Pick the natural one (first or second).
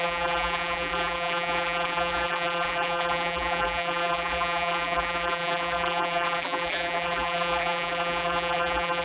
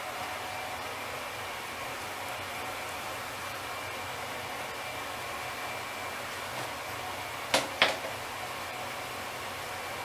second